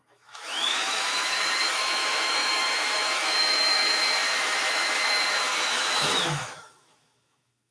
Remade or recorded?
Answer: remade